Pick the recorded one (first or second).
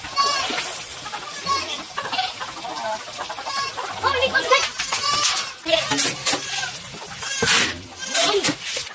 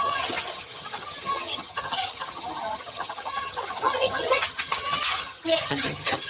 first